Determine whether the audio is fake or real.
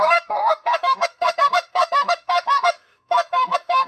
fake